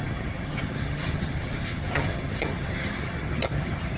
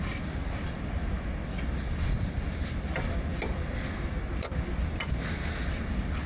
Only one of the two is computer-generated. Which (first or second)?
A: first